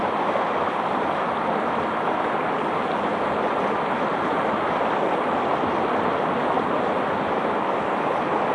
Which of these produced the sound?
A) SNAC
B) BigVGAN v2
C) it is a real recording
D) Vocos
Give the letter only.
C